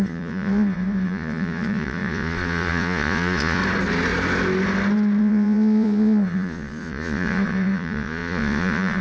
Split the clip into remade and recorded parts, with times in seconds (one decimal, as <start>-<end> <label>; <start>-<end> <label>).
0.0-3.6 remade; 3.6-5.2 recorded; 5.2-9.0 remade